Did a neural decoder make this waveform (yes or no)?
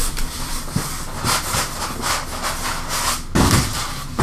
no